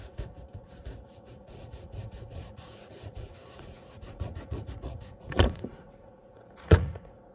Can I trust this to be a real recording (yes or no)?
no